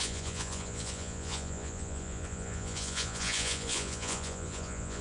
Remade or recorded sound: remade